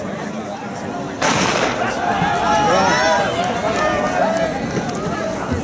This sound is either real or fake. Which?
real